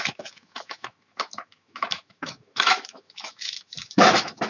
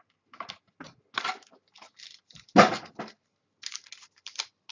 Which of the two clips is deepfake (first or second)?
first